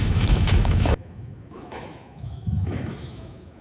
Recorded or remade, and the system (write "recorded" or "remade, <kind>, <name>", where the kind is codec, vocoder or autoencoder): remade, autoencoder, DAC-VAE